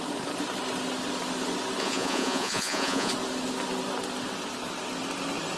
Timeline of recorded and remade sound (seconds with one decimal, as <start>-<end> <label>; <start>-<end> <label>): 0.0-1.8 recorded; 1.8-3.1 remade; 3.1-5.6 recorded

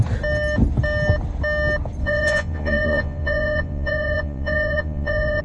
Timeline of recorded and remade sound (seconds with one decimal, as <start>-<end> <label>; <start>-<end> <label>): 0.0-2.0 recorded; 2.0-5.4 remade

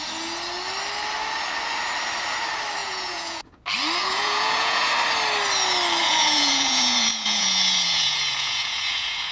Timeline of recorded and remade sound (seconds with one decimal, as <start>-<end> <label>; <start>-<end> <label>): 0.0-2.8 recorded; 2.8-3.6 remade; 3.6-4.0 recorded; 4.0-4.9 remade; 4.9-6.0 recorded; 6.0-9.3 remade

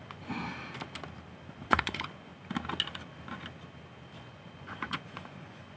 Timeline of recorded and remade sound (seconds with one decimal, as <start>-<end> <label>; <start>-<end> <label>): 0.0-0.4 remade; 0.4-1.5 recorded; 1.5-2.3 remade; 2.3-4.2 recorded; 4.2-5.8 remade